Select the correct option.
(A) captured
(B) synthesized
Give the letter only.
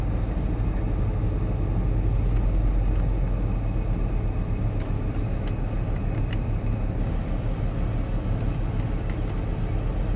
A